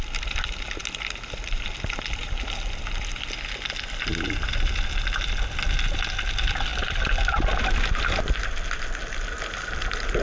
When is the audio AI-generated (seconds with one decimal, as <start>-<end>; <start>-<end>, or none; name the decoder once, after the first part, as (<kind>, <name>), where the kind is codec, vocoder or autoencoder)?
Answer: none